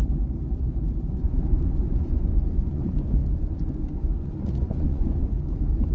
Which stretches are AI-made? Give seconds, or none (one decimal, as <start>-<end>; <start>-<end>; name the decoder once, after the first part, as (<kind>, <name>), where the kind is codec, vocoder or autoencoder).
1.1-5.9 (vocoder, Vocos)